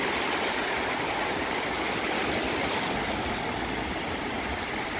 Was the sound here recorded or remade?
recorded